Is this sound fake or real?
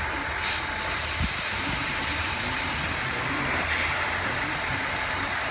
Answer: fake